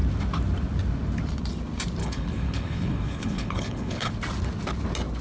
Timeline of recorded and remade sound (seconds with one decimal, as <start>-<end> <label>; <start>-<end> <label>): 0.0-2.0 recorded; 2.0-4.1 remade; 4.1-5.2 recorded